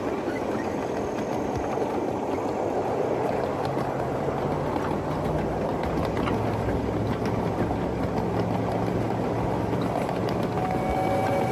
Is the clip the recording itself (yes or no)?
yes